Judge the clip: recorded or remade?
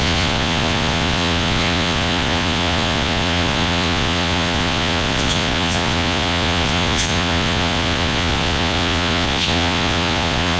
remade